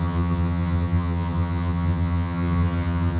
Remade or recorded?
remade